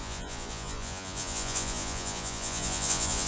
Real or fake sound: fake